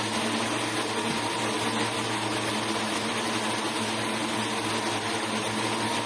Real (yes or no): yes